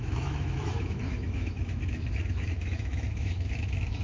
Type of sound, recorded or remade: remade